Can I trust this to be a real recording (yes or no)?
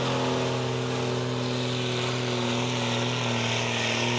yes